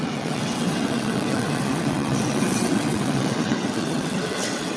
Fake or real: fake